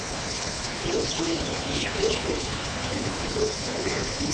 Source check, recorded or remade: remade